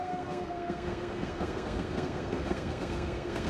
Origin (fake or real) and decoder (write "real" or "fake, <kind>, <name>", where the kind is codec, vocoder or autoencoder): fake, codec, SNAC